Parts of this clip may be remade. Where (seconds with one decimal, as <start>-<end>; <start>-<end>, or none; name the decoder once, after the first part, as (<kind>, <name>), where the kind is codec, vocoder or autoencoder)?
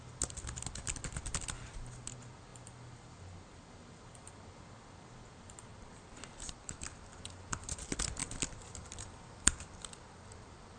5.7-7.2 (vocoder, BigVGAN v2); 8.2-10.8